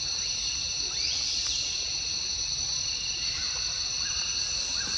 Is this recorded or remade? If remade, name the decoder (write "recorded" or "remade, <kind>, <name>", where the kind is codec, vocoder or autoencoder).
recorded